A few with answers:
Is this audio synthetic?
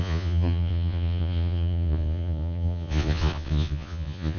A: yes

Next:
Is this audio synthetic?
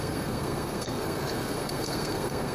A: yes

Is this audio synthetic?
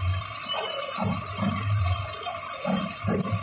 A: no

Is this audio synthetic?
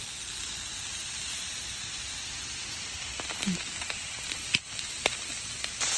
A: no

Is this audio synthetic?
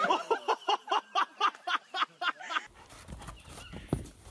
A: no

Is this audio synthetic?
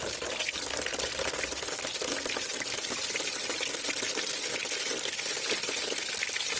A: no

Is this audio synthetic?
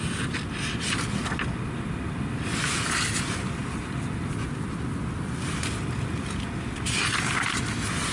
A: no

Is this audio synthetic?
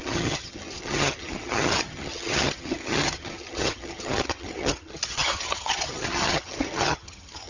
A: yes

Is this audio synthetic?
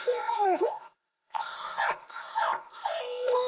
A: yes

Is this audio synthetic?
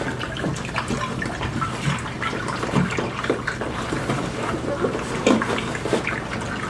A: no